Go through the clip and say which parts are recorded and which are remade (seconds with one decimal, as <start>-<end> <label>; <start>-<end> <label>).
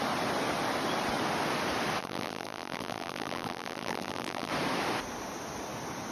0.0-2.0 recorded; 2.0-4.5 remade; 4.5-6.1 recorded